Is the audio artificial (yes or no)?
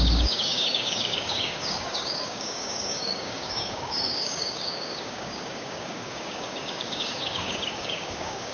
yes